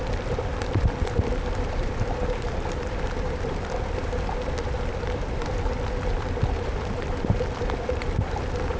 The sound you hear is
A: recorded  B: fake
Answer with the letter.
B